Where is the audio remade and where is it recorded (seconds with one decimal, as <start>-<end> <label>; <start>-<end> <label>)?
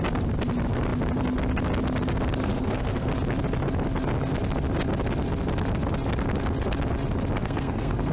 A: 0.0-2.4 recorded; 2.4-3.1 remade; 3.1-7.4 recorded; 7.4-8.1 remade